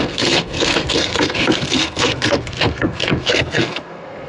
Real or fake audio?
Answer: fake